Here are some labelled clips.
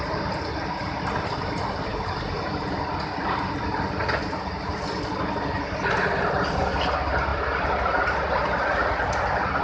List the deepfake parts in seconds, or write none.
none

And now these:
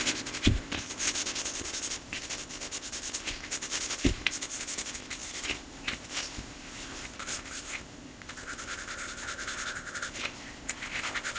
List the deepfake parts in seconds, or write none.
0.0-11.4

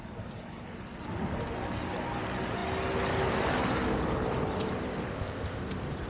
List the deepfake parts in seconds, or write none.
5.1-5.6

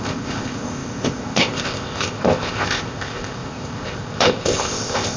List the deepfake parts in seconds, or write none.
0.0-5.2

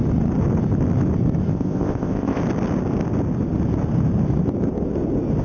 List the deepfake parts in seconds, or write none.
1.5-2.4

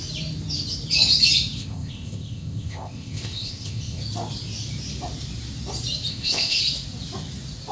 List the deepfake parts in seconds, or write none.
1.6-4.0; 6.1-6.6

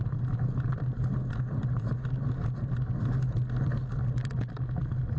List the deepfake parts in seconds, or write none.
none